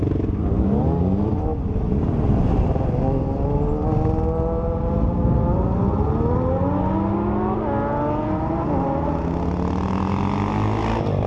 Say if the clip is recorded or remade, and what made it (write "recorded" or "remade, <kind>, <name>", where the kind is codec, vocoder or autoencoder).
recorded